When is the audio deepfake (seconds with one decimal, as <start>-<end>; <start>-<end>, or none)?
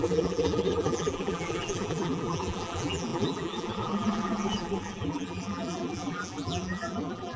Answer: 0.0-7.4